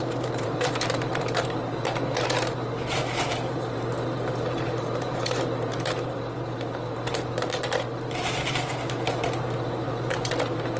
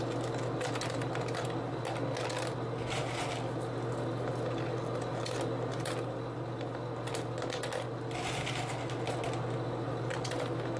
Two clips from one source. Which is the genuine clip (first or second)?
second